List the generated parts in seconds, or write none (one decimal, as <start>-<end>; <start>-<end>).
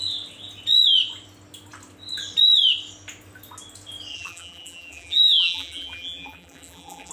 4.1-7.1